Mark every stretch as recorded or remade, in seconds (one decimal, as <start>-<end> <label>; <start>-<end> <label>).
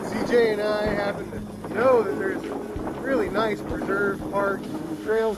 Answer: 0.0-4.7 recorded; 4.7-5.4 remade